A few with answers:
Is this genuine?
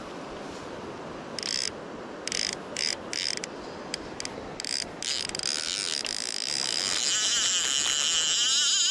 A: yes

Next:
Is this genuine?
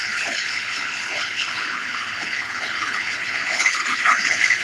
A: no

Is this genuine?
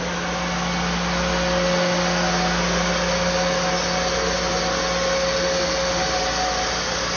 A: yes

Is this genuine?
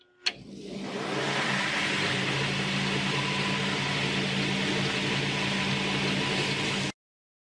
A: yes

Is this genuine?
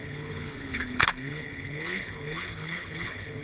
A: no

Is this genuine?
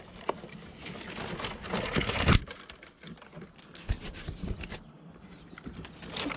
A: yes